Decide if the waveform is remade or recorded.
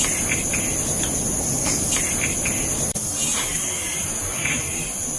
recorded